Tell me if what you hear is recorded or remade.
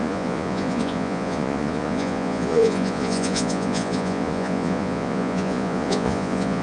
remade